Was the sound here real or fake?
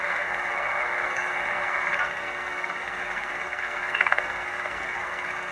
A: fake